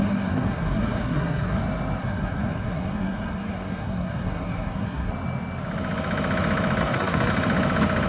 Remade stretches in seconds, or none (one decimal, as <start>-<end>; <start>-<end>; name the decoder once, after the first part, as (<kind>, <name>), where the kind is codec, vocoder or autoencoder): 0.0-1.6 (codec, SNAC); 2.0-5.1; 6.8-7.3